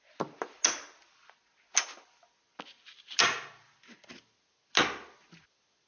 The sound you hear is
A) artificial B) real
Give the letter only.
B